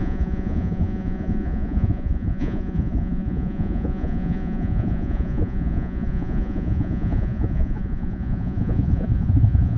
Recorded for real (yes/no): no